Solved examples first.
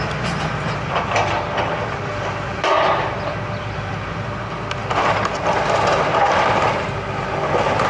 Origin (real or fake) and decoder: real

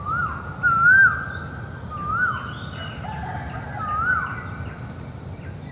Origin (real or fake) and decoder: real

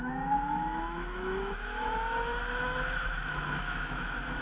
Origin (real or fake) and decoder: fake, autoencoder, DAC-VAE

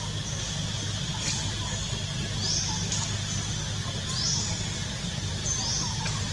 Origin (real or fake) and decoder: real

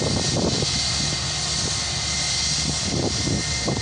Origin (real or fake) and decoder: real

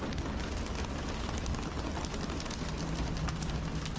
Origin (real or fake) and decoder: real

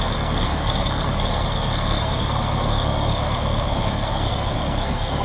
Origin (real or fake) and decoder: fake, codec, SNAC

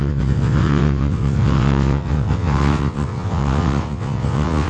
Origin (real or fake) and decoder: fake, vocoder, WaveNeXt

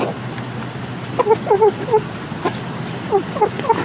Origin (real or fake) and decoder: real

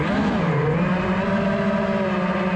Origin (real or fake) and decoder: real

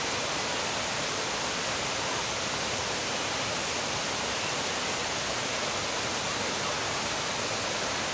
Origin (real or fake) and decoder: real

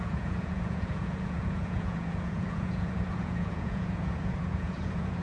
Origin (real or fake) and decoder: fake, vocoder, Vocos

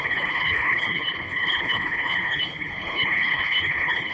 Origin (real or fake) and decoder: fake, codec, HILCodec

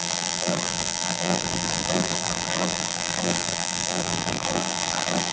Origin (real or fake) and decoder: fake, vocoder, BigVGAN v2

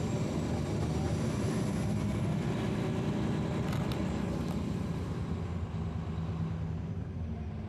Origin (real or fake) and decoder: real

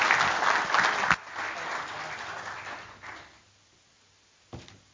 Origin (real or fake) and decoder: real